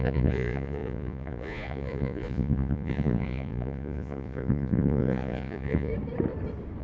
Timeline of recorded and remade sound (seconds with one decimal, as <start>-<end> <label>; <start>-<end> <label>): 0.0-5.9 remade; 5.9-6.8 recorded